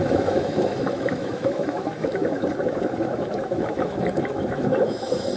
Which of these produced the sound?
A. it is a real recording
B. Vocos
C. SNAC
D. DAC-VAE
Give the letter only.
D